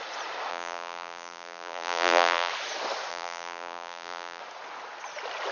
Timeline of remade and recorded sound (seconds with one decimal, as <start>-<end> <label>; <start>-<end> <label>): 0.0-0.5 recorded; 0.5-2.5 remade; 2.5-3.1 recorded; 3.1-4.4 remade; 4.4-5.5 recorded